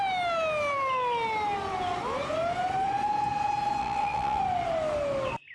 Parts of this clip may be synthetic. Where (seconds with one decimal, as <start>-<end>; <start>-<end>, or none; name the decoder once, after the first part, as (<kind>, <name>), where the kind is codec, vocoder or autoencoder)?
3.8-4.4 (vocoder, WaveNeXt)